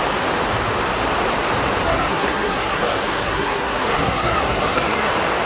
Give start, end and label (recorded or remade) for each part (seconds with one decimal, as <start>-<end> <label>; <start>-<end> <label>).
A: 0.0-1.8 recorded; 1.8-5.1 remade; 5.1-5.5 recorded